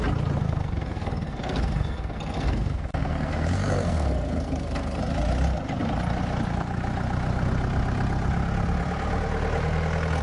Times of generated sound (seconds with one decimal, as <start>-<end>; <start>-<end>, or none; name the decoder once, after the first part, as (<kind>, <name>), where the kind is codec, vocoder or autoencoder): 0.4-5.0 (codec, SNAC)